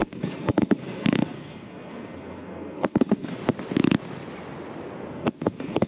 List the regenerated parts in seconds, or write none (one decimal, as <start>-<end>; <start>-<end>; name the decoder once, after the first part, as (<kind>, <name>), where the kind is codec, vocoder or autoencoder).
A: 0.0-3.4 (codec, SNAC); 5.1-5.9